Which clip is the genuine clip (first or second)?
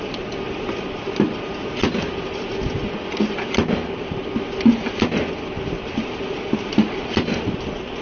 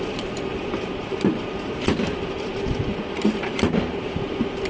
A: first